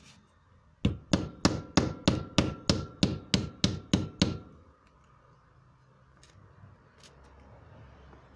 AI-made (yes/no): no